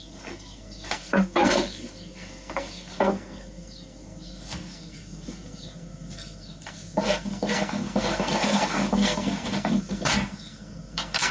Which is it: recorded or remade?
remade